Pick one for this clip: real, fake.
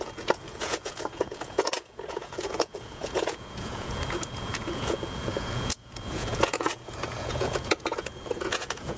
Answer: fake